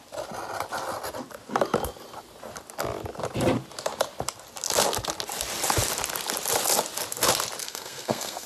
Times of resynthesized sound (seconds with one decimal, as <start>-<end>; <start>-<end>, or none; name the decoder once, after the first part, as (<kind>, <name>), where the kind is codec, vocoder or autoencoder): 7.6-8.5 (codec, SNAC)